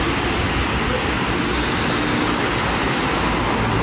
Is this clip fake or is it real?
real